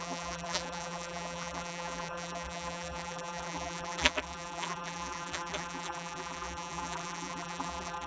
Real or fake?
fake